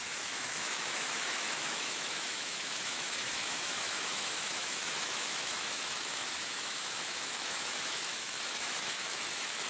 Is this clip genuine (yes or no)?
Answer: no